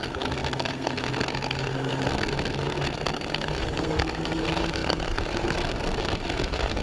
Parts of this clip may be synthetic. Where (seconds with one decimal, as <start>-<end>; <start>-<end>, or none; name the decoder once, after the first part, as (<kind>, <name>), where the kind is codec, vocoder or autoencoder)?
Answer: 0.0-6.8 (codec, SNAC)